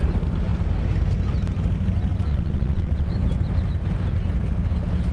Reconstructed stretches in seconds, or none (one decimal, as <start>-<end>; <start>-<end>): 2.3-3.1